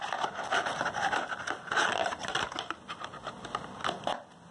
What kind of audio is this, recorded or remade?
recorded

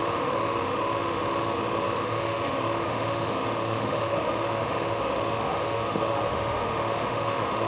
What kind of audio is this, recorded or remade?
remade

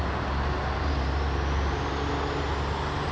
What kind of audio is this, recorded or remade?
recorded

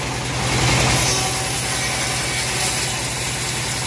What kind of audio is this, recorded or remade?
recorded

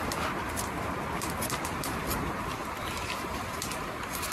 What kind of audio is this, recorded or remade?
remade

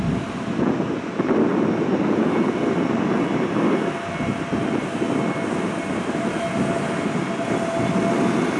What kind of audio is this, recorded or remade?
recorded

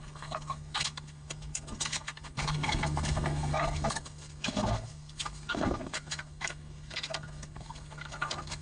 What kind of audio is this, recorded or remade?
remade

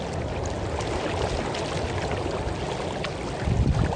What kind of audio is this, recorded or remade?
recorded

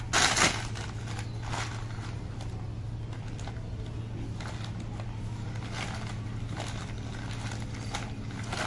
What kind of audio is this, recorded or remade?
recorded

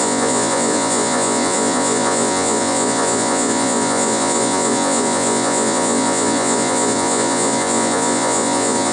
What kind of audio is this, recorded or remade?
remade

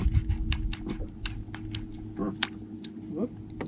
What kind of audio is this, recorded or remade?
recorded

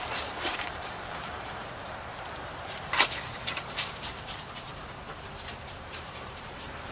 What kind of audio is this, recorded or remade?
remade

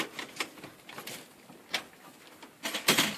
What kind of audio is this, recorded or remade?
recorded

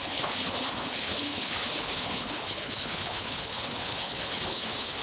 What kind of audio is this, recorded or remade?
remade